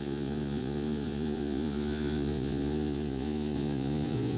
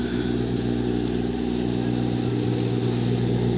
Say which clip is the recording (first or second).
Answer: second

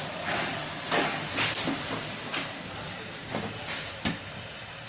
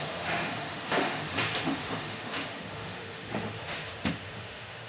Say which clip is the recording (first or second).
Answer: first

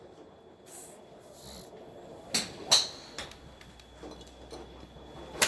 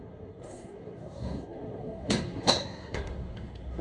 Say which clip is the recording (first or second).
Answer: first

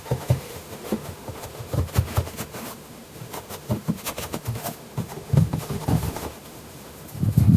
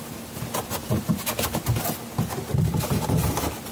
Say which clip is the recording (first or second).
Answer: second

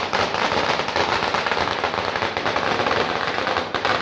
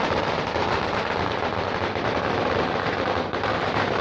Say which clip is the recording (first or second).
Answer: first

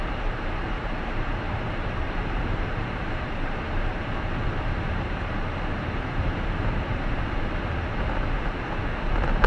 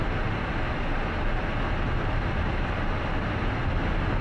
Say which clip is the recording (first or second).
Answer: second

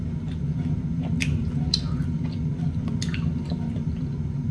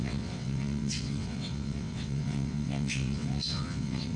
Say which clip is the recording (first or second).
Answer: first